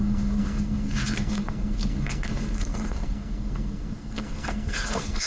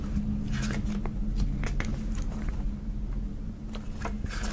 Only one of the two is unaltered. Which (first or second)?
second